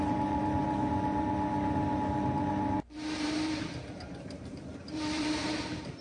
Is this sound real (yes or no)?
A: no